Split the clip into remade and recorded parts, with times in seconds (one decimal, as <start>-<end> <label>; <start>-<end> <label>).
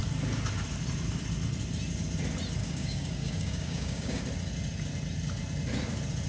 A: 0.0-2.6 recorded; 2.6-4.2 remade; 4.2-6.3 recorded